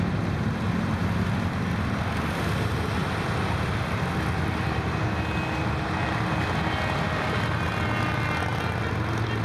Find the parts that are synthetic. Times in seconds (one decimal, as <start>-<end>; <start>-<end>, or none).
none